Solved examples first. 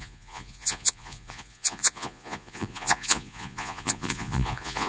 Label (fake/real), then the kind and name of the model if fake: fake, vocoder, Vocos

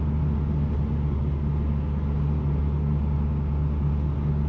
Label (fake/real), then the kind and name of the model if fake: real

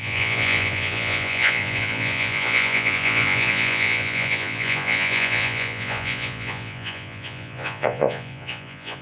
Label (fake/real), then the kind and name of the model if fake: fake, vocoder, Vocos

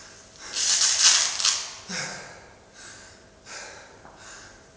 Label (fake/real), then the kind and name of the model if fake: real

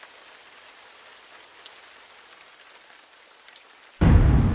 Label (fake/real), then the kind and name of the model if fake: real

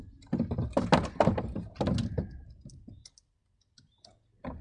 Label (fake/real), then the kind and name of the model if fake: real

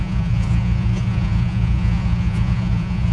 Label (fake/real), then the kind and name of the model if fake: fake, vocoder, Vocos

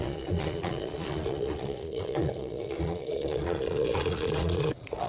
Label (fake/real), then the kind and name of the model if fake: fake, vocoder, Vocos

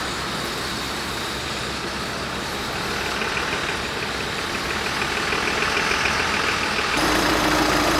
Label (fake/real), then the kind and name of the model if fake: real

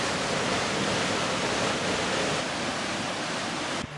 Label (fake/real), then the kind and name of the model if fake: real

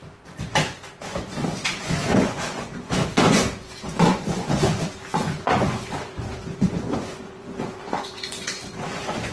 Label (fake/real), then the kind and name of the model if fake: fake, vocoder, Vocos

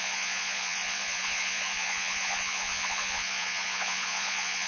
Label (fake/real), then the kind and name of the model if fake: fake, vocoder, Vocos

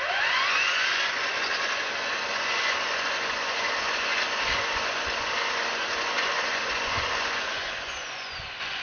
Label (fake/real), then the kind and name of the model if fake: fake, vocoder, Vocos